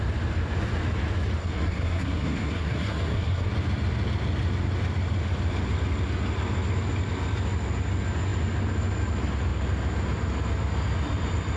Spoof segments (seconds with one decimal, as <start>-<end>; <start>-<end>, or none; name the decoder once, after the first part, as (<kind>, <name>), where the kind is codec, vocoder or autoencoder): 1.4-3.5 (codec, SNAC)